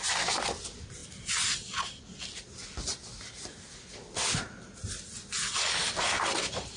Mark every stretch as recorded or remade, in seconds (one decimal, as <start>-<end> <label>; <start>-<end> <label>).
0.0-6.8 recorded